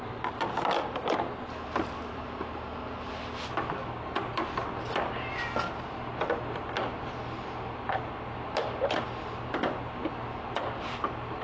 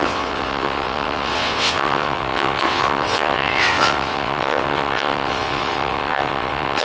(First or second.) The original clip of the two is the first